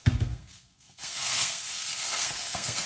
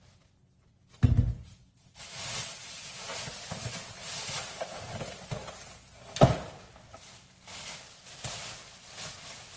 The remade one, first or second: first